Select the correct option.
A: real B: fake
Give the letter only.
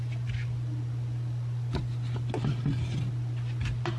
A